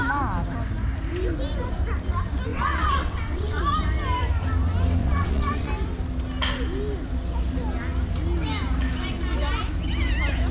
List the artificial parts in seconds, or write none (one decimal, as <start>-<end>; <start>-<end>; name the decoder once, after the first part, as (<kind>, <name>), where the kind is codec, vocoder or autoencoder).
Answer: 2.5-3.6 (vocoder, WaveNeXt); 5.0-5.7

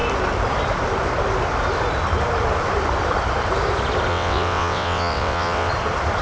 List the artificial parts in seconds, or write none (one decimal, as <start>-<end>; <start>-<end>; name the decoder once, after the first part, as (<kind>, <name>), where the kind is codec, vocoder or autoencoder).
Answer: 4.1-5.7 (vocoder, WaveNeXt)

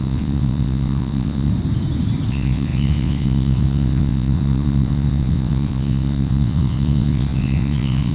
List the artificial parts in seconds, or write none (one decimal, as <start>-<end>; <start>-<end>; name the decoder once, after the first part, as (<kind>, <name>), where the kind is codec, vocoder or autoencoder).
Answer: 0.0-1.5 (vocoder, WaveNeXt); 2.3-8.1

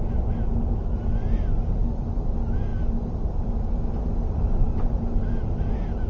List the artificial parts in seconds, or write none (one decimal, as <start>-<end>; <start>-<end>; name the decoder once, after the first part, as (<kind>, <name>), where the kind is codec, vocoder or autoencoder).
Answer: none

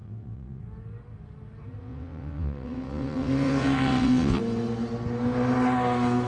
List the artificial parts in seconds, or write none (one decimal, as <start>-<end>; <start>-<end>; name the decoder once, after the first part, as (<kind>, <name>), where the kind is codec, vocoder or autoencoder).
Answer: 0.0-0.6 (vocoder, WaveNeXt); 1.8-4.4

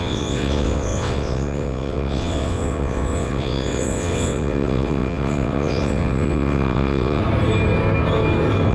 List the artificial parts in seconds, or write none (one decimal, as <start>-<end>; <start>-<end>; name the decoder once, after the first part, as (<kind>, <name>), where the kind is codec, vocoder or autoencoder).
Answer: 0.0-7.2 (vocoder, WaveNeXt)

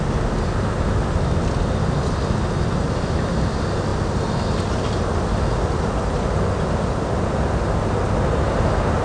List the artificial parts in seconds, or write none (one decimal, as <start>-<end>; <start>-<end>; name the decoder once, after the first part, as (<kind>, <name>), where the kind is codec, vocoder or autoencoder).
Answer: none

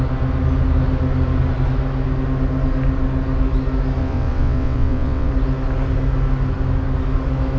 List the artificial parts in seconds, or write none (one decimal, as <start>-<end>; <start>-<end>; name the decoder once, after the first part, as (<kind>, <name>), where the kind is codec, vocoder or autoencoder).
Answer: 4.0-5.3 (vocoder, WaveNeXt)